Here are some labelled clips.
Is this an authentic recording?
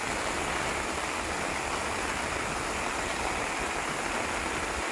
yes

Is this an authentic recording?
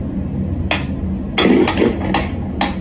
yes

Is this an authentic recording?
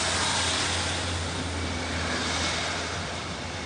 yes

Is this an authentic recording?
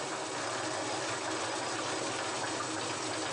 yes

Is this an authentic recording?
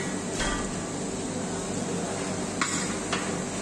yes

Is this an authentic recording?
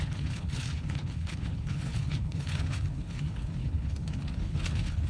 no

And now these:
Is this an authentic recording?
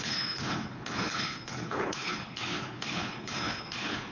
no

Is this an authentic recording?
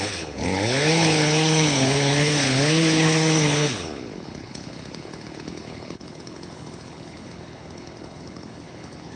no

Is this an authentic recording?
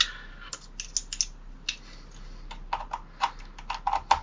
yes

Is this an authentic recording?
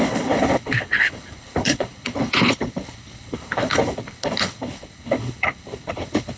no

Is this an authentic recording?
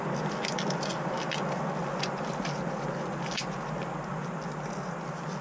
yes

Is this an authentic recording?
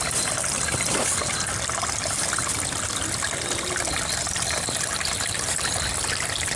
yes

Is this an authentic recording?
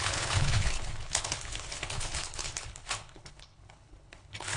no